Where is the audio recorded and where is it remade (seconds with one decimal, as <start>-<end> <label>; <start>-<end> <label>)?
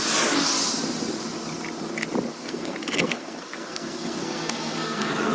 0.0-2.4 recorded; 2.4-5.3 remade